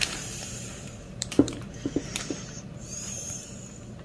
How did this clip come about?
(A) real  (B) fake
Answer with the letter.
B